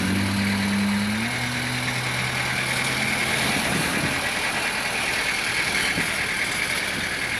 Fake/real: real